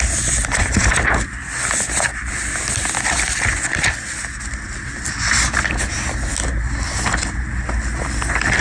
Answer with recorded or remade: recorded